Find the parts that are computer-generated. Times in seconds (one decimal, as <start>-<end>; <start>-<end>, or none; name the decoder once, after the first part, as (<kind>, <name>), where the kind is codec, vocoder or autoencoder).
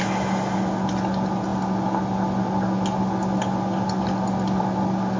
none